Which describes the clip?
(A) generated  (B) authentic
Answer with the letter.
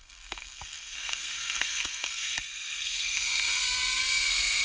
A